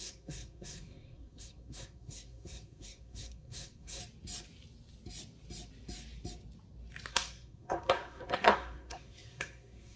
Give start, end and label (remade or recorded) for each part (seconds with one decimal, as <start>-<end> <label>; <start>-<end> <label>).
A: 0.0-4.0 remade; 4.0-7.1 recorded; 7.1-10.0 remade